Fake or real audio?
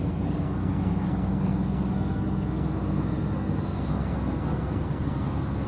fake